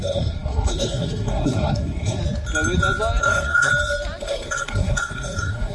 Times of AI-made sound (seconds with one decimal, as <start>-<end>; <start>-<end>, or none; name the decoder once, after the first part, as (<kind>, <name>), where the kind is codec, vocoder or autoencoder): 0.0-2.2 (codec, SNAC); 3.2-3.7; 4.2-5.7